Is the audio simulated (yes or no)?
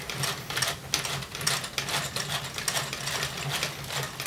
no